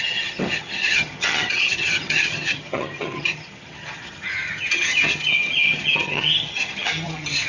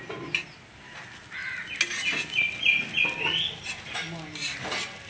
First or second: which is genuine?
second